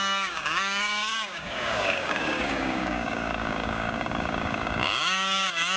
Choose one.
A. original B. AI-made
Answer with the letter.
B